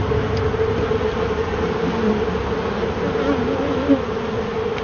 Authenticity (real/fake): real